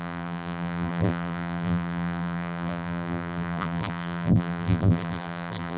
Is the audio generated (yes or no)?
yes